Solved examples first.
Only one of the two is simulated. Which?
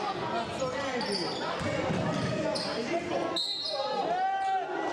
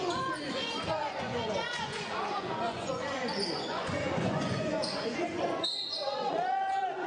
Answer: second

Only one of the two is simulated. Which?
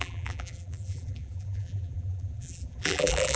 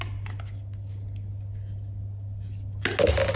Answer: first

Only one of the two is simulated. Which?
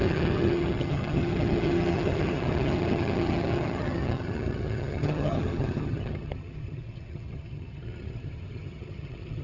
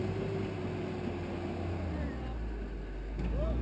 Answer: first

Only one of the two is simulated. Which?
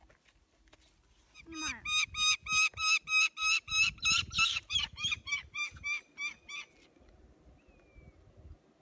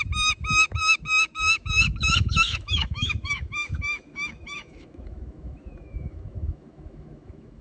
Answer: second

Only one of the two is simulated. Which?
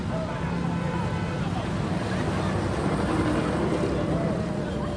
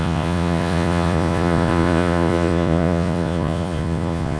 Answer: second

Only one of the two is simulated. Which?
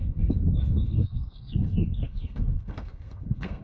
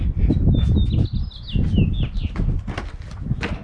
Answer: first